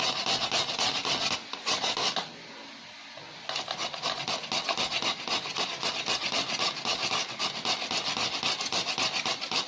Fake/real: real